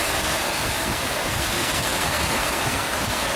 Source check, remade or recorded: remade